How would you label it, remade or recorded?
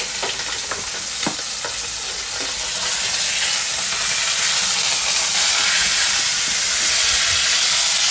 recorded